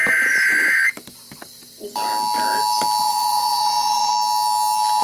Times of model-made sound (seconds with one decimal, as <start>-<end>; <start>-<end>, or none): 3.0-4.1